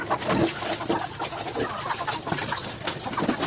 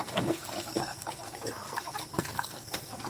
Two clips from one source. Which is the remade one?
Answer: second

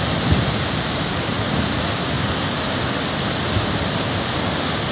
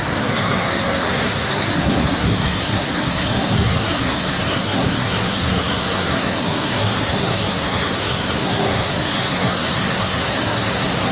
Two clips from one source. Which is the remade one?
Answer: second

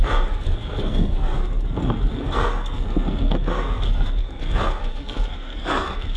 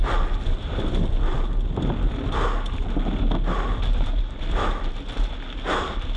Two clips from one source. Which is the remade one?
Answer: first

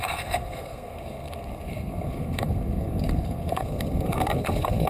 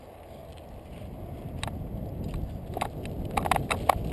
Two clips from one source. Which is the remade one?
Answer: first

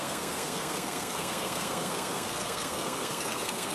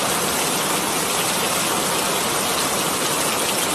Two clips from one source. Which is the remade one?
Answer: first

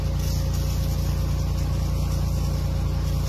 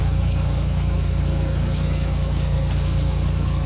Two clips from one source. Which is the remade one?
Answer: second